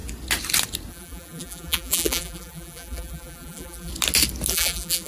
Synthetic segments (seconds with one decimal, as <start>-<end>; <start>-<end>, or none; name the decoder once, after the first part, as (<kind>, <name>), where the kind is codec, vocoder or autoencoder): 0.9-3.9 (vocoder, BigVGAN v2); 4.5-5.1